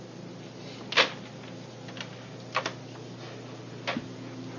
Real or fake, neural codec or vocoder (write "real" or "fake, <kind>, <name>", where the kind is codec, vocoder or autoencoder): real